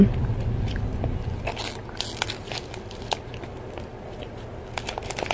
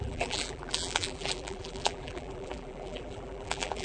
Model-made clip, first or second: second